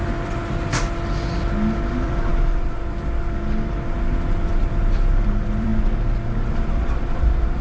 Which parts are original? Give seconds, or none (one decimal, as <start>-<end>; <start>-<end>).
0.4-1.9; 2.3-4.6; 5.7-7.6